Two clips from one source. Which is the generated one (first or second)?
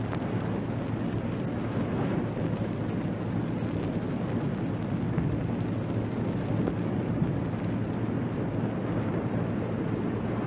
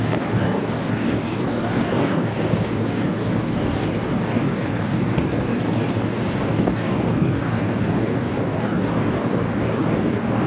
second